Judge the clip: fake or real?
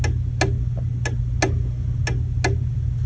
real